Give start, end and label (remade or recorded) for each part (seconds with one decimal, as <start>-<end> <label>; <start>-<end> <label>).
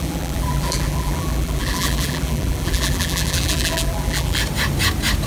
0.0-4.4 remade; 4.4-5.3 recorded